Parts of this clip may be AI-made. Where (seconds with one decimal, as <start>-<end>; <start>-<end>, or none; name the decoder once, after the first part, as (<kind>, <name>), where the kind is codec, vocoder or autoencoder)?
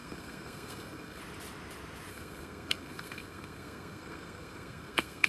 0.0-1.2 (codec, SNAC); 2.1-5.3